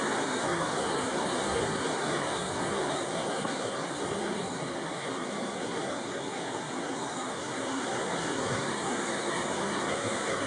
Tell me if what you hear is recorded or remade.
remade